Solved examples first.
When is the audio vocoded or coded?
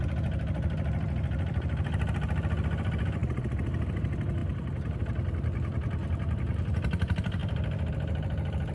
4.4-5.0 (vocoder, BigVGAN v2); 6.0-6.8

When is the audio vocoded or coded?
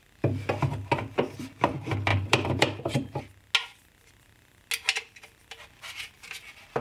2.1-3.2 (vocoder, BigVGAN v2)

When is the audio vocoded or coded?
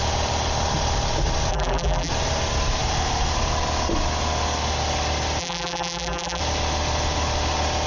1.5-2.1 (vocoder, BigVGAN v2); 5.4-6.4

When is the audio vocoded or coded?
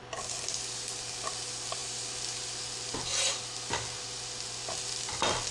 none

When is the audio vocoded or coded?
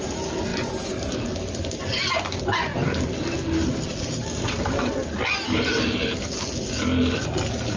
none